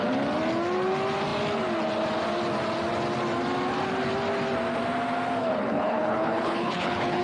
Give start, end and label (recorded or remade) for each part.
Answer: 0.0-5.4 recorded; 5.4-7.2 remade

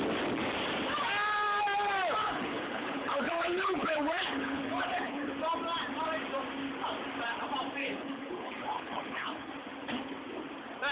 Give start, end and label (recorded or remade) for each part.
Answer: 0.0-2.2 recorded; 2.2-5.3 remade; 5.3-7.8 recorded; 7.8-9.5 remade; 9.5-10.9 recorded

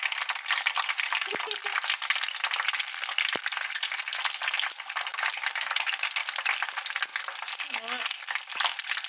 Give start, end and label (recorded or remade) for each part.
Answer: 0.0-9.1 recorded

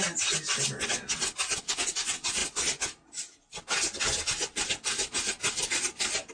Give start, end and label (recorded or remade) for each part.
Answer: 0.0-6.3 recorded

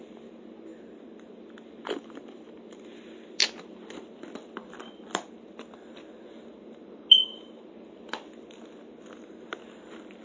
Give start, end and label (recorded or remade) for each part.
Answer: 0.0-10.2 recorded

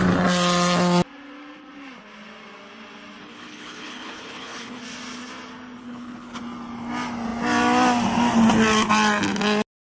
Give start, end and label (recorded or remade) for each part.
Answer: 0.0-3.2 recorded; 3.2-4.8 remade; 4.8-5.8 recorded; 5.8-6.4 remade; 6.4-9.8 recorded

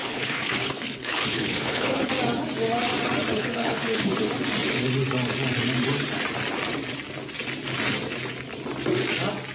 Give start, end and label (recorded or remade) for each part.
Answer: 0.0-2.1 remade; 2.1-3.3 recorded; 3.3-4.1 remade; 4.1-9.5 recorded